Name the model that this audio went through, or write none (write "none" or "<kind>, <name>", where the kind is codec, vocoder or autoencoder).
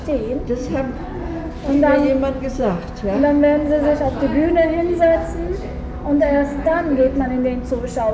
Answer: none